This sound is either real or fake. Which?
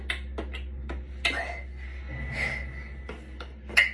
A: real